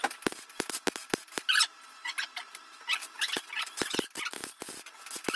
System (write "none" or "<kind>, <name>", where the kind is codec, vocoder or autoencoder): none